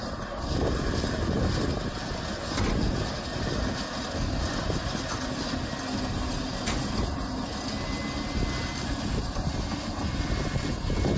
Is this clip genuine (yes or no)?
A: yes